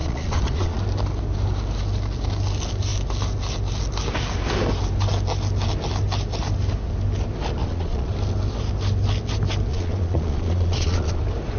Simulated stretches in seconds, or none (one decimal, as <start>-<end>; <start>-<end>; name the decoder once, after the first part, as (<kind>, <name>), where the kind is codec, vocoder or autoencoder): 0.0-0.8 (vocoder, Vocos); 7.6-8.1; 9.7-11.2